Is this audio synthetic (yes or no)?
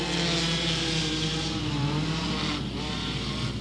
no